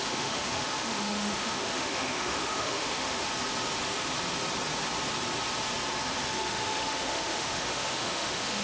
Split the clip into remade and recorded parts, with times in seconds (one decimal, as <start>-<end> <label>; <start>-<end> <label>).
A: 0.0-3.3 remade; 3.3-6.3 recorded; 6.3-8.6 remade